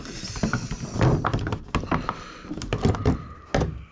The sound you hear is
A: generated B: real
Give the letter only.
B